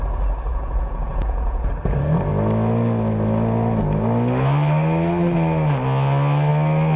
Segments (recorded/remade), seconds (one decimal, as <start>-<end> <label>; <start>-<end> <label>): 0.0-0.5 recorded; 0.5-1.7 remade; 1.7-7.0 recorded